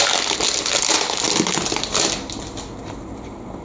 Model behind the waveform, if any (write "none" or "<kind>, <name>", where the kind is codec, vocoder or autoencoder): none